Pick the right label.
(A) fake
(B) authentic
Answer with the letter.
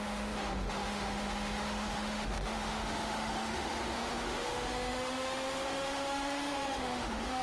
A